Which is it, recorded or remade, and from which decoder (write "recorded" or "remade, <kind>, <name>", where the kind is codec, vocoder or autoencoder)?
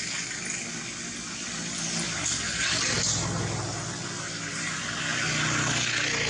recorded